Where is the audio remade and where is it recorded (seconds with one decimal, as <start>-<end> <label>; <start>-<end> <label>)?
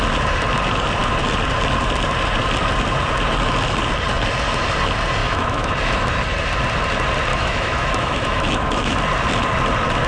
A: 0.0-5.2 recorded; 5.2-5.7 remade; 5.7-7.3 recorded; 7.3-8.9 remade; 8.9-10.1 recorded